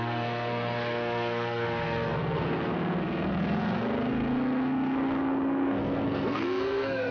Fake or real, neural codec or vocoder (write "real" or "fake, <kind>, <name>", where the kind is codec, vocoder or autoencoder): fake, codec, SNAC